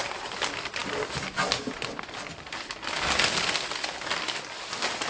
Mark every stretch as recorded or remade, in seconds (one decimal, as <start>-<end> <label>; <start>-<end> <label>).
0.0-5.1 recorded